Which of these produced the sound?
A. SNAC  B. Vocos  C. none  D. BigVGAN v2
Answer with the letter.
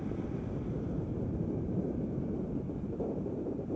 D